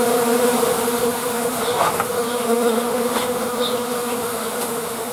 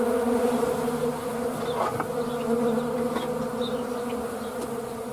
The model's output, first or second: first